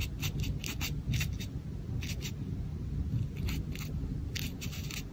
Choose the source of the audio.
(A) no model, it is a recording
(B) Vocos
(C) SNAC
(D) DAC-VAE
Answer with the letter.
A